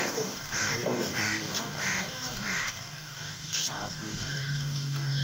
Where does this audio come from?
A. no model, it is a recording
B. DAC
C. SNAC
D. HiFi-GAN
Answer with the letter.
B